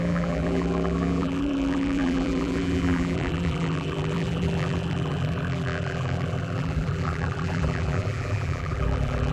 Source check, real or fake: fake